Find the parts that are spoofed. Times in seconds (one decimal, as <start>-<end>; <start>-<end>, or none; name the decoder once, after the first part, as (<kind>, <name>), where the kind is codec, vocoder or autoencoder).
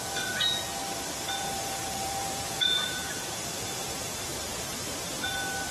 0.0-0.8 (vocoder, Vocos); 1.4-4.3